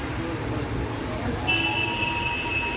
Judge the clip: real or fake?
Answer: real